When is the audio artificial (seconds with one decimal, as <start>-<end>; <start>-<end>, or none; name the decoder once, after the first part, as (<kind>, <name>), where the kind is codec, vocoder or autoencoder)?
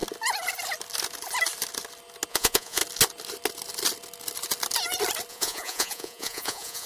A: 2.3-2.8 (vocoder, Vocos); 5.3-6.9